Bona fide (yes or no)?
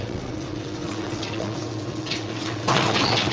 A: no